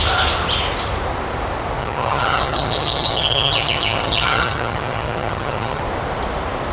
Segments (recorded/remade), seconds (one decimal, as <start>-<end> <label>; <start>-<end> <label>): 0.0-1.8 recorded; 1.8-5.8 remade; 5.8-6.7 recorded